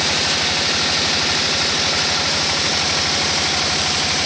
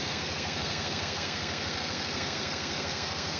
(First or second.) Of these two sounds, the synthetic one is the second